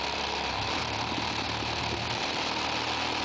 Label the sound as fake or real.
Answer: real